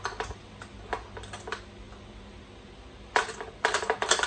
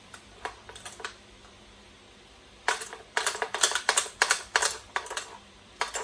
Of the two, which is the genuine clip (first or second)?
first